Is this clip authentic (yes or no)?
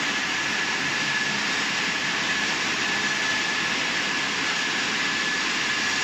yes